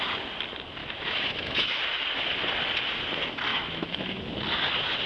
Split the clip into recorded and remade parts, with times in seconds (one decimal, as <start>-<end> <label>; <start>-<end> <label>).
0.0-0.8 recorded; 0.8-1.8 remade; 1.8-3.5 recorded; 3.5-4.2 remade; 4.2-5.1 recorded